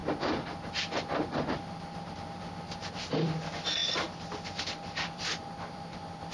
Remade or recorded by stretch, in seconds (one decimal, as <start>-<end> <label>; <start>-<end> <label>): 0.0-6.3 recorded